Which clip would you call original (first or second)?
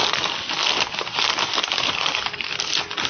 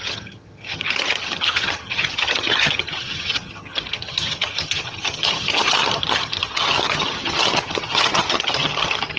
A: first